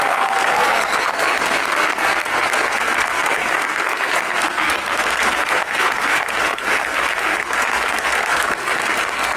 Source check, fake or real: fake